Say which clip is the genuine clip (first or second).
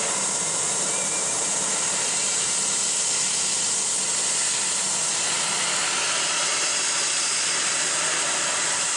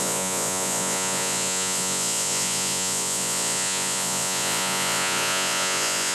first